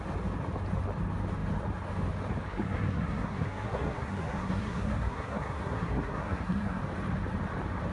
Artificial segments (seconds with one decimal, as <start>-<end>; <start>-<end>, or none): 2.5-6.8